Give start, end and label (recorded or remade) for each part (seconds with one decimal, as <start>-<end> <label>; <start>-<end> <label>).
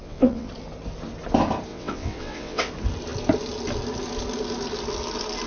0.0-0.5 remade; 0.5-1.7 recorded; 1.7-2.7 remade; 2.7-5.5 recorded